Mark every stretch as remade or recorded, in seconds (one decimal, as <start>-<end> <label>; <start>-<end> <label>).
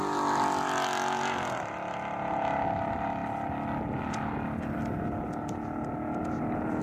0.0-6.8 recorded